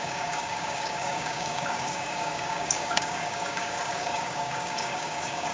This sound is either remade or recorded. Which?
remade